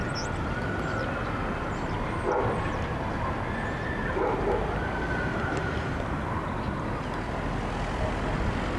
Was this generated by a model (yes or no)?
no